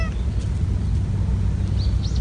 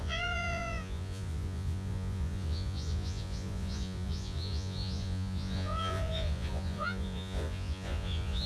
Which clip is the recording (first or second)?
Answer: first